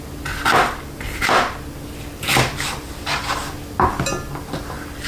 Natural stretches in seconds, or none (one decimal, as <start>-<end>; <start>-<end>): none